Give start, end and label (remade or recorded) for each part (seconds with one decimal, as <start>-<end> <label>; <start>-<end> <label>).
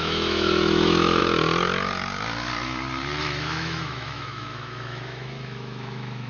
0.0-1.2 remade; 1.2-3.2 recorded; 3.2-6.3 remade